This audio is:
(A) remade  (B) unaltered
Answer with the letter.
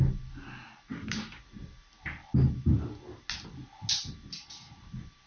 B